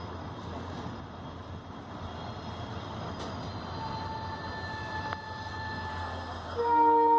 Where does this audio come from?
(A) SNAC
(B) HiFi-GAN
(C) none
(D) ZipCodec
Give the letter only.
C